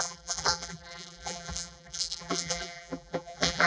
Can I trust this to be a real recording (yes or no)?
no